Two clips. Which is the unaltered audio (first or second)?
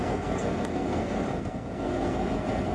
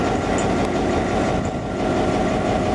second